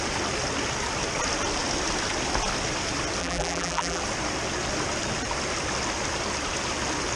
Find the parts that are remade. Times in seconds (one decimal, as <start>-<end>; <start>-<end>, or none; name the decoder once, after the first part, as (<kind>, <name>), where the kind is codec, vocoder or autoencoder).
3.2-4.0 (vocoder, BigVGAN v2)